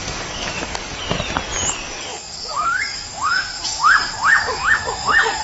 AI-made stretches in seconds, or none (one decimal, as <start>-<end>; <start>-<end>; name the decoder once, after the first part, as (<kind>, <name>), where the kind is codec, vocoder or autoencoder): 0.0-1.0 (codec, DAC); 2.1-5.4